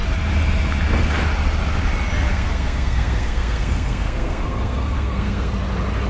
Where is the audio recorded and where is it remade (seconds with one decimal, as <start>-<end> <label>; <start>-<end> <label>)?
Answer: 0.0-2.3 recorded; 2.3-5.5 remade; 5.5-6.1 recorded

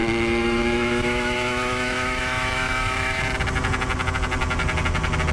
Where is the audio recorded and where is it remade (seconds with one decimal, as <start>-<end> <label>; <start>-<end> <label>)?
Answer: 0.0-3.2 remade; 3.2-5.3 recorded

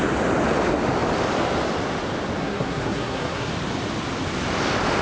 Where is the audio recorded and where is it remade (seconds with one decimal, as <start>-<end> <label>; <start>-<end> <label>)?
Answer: 0.0-2.4 recorded; 2.4-3.5 remade; 3.5-5.0 recorded

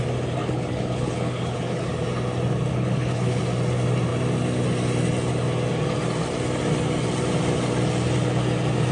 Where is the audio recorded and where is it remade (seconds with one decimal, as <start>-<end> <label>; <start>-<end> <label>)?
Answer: 0.0-0.4 recorded; 0.4-1.9 remade; 1.9-2.7 recorded; 2.7-3.4 remade; 3.4-8.9 recorded